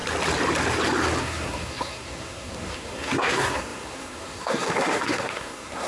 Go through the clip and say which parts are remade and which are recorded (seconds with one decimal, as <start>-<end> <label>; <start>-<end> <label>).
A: 0.0-1.2 recorded; 1.2-5.9 remade